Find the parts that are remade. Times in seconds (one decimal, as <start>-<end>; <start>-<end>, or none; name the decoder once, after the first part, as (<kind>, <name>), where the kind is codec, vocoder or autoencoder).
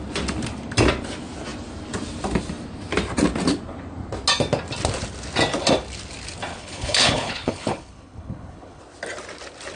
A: 6.5-8.8 (codec, HILCodec)